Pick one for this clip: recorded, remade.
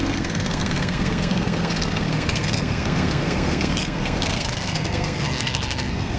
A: remade